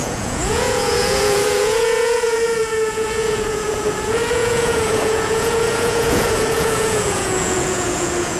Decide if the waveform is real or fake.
fake